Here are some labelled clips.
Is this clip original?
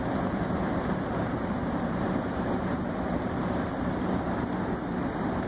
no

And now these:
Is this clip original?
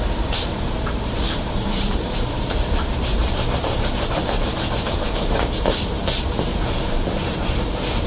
no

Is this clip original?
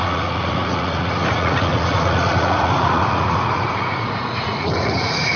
no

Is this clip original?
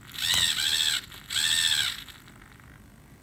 yes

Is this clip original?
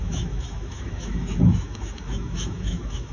no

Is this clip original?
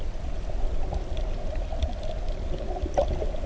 yes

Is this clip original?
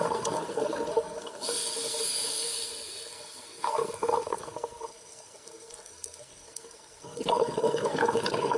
no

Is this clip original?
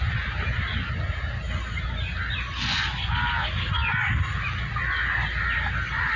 yes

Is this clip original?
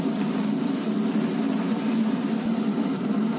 no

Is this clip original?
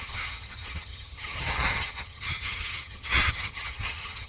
no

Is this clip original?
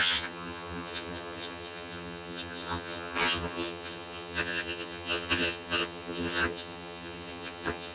no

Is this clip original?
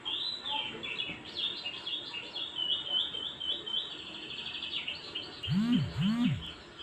yes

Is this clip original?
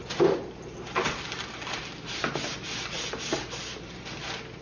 yes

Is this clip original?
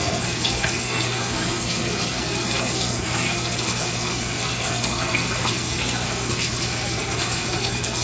no